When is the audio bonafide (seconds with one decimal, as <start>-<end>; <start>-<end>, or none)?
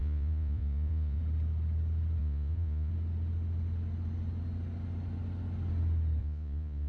1.2-2.2; 2.9-6.2